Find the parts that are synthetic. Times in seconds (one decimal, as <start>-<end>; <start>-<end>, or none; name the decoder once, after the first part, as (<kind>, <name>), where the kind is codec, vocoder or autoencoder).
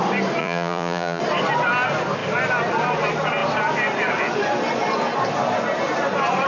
0.4-1.2 (vocoder, Vocos)